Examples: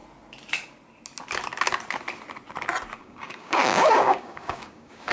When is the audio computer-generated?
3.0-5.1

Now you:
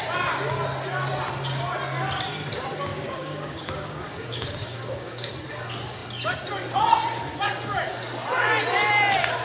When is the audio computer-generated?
2.9-5.3